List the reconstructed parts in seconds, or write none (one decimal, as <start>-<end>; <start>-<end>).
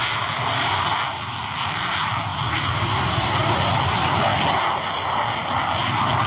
none